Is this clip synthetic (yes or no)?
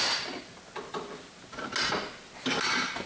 no